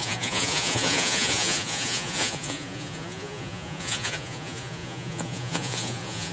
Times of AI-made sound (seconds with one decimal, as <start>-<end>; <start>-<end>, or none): 0.0-6.3

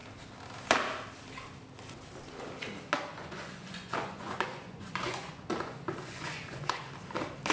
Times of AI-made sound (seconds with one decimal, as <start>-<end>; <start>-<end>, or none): 3.1-6.9